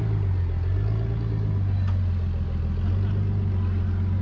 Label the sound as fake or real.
real